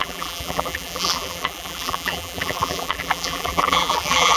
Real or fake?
fake